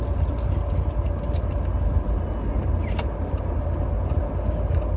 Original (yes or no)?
yes